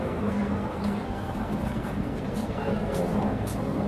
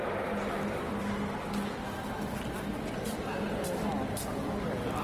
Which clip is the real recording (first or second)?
second